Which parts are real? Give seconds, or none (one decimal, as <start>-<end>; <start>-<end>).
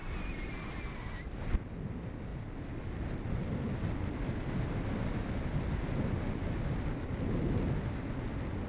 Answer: 0.0-8.7